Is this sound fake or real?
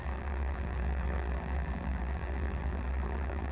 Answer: fake